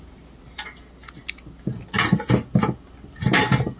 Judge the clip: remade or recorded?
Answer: recorded